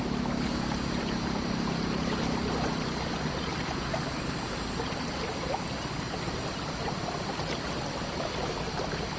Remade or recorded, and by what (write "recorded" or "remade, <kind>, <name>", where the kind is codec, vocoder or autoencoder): recorded